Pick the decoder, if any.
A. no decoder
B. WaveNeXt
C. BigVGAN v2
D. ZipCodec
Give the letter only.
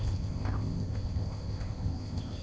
D